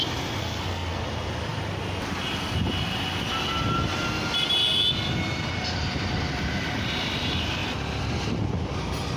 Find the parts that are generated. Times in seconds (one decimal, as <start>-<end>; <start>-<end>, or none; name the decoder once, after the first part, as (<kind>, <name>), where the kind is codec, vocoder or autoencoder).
0.4-1.0 (codec, SNAC)